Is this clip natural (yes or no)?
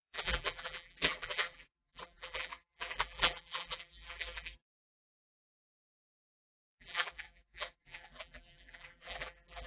no